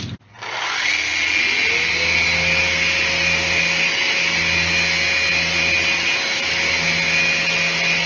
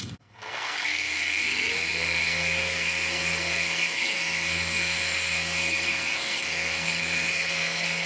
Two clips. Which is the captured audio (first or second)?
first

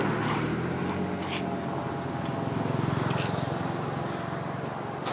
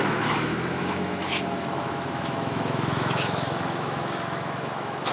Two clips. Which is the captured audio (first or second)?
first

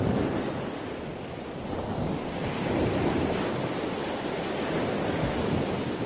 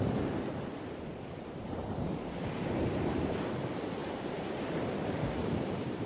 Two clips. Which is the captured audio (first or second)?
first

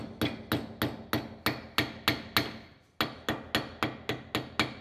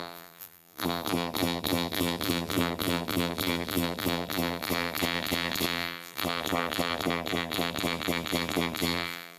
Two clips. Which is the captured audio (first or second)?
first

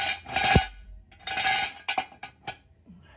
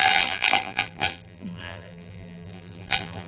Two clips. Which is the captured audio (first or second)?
first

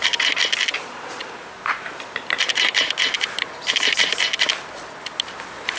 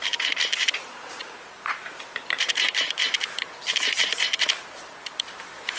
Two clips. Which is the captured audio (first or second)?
first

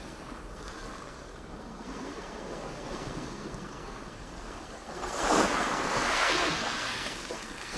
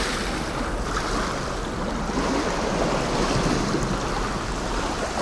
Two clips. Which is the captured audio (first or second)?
second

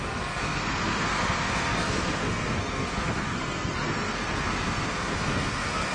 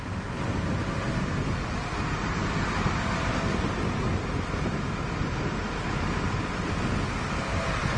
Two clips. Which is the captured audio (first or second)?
second